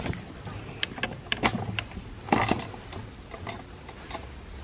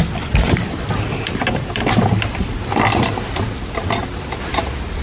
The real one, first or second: first